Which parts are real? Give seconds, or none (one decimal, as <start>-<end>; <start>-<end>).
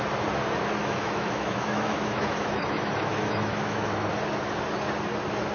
0.0-0.8; 4.1-5.5